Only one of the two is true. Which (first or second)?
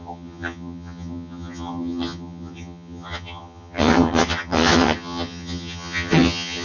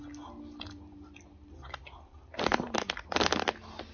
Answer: second